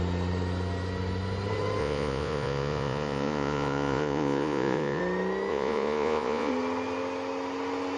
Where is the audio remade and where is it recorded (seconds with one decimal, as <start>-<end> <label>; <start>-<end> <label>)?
0.0-1.8 recorded; 1.8-5.0 remade; 5.0-5.5 recorded; 5.5-6.5 remade; 6.5-8.0 recorded